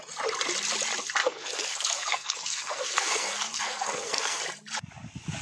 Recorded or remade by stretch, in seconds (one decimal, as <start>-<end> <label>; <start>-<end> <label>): 0.0-1.2 recorded; 1.2-4.4 remade; 4.4-5.4 recorded

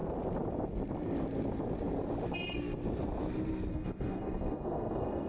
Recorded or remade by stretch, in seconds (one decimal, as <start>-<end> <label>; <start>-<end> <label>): 0.0-3.7 recorded; 3.7-5.3 remade